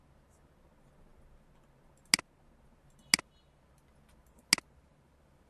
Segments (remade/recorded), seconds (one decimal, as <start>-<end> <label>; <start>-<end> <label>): 0.0-5.5 recorded